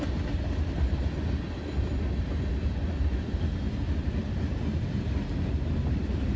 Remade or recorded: recorded